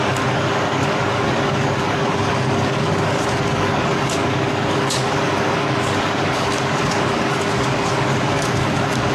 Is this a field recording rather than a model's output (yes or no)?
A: no